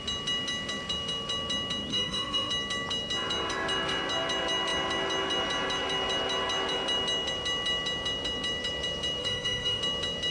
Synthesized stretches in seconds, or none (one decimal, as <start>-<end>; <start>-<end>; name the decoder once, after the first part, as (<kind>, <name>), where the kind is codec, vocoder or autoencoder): 1.9-2.5 (autoencoder, DAC-VAE); 9.2-9.8

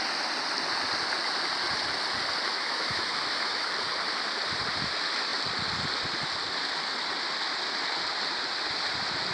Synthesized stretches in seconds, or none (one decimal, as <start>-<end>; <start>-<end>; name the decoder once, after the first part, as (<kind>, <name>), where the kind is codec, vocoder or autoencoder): 2.5-3.7 (autoencoder, DAC-VAE)

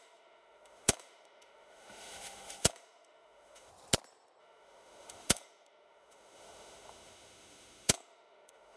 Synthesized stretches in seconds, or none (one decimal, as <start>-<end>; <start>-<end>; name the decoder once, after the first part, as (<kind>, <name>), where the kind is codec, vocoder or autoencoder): 0.0-3.7 (autoencoder, DAC-VAE); 4.4-8.8

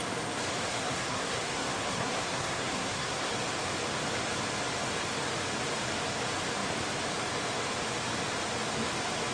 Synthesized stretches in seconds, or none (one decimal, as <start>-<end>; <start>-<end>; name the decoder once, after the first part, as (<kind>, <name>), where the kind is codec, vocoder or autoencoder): 0.7-3.3 (codec, SNAC)

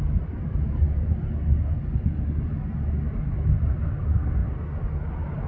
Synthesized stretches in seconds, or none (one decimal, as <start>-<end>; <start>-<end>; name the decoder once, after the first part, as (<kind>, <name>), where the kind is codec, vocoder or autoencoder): none

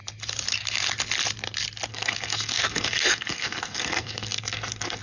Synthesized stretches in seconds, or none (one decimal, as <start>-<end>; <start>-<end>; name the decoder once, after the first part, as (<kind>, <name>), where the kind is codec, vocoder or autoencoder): 1.9-5.0 (codec, SNAC)